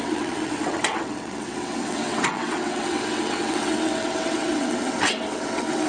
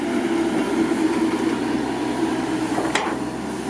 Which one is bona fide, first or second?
second